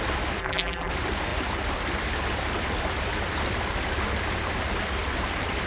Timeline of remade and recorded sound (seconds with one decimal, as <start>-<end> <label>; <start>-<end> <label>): 0.0-0.4 recorded; 0.4-0.9 remade; 0.9-5.7 recorded